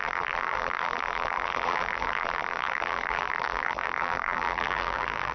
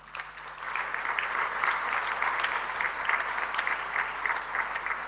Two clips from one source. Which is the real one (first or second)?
second